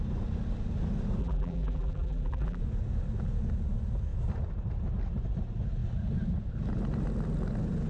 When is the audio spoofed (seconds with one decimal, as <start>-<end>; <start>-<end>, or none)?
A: 1.2-2.6